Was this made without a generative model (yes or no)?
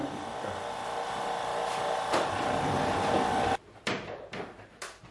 no